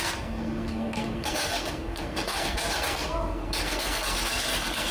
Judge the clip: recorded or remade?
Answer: remade